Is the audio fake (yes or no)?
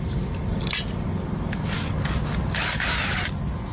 no